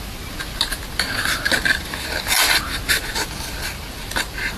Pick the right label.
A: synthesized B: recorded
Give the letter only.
B